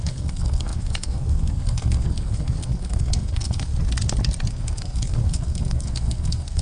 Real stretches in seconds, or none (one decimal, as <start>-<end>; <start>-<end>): 3.7-4.5